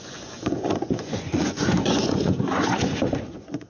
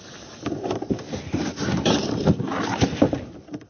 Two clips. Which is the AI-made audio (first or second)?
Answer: first